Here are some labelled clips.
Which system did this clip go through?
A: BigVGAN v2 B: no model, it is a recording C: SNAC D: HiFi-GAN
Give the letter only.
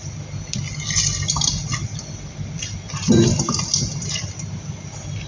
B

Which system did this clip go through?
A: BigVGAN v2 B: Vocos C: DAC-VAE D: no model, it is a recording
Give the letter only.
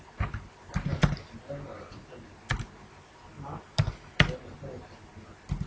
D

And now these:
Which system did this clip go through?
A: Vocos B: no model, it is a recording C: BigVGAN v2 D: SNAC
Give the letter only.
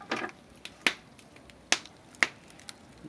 B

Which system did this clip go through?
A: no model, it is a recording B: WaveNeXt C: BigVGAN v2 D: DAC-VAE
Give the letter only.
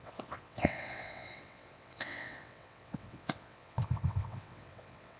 B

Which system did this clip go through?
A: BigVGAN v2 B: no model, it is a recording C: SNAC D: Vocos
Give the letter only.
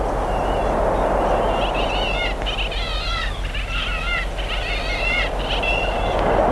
A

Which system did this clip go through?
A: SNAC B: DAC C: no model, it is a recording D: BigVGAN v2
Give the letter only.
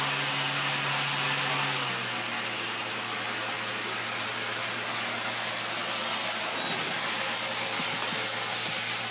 C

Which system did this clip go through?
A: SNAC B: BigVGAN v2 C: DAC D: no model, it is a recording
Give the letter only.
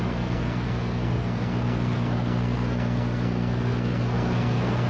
A